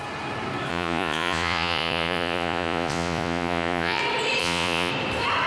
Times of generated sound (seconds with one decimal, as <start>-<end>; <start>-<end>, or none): 0.7-4.0; 4.4-4.9